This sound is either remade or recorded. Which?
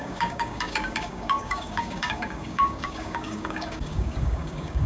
remade